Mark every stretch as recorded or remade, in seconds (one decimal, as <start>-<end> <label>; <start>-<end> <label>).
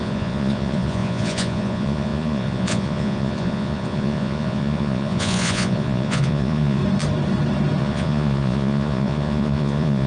0.0-6.8 remade; 6.8-7.8 recorded; 7.8-10.1 remade